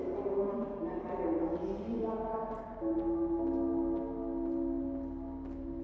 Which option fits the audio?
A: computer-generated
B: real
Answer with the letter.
B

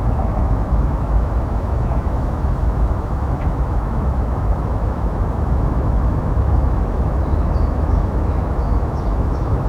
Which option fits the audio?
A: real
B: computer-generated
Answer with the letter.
B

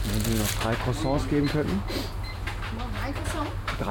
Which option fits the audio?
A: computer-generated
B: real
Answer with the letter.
B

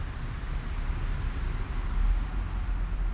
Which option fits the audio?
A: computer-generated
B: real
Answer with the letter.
B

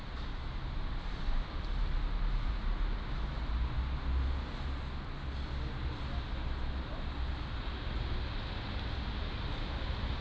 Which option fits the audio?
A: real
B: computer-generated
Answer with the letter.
A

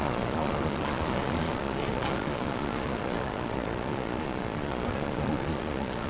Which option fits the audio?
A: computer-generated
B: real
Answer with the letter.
A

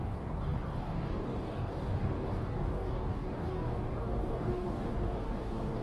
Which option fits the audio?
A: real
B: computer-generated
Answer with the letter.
B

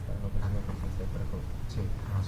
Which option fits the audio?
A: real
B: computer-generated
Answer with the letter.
A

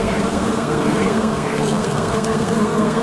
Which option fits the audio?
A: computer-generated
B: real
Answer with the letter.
A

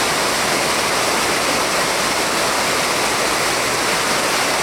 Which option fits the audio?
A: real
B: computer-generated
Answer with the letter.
A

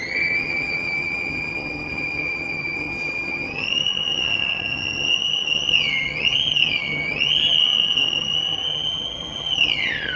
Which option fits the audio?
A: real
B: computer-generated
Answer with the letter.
B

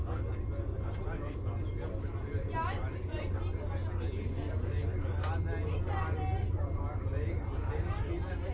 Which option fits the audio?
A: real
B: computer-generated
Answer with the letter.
A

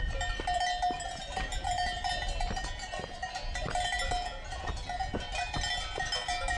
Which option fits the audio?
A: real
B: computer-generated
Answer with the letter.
A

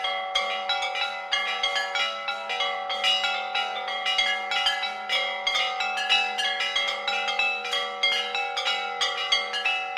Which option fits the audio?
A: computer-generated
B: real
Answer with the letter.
B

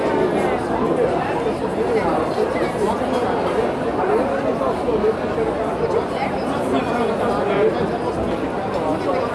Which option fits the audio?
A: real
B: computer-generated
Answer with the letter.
A